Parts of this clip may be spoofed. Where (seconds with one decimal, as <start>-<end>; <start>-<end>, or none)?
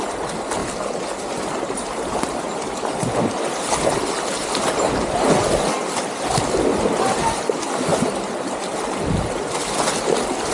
none